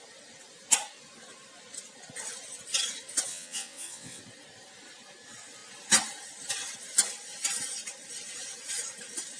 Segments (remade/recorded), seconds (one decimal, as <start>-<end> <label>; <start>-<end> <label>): 0.0-3.3 recorded; 3.3-4.2 remade; 4.2-9.4 recorded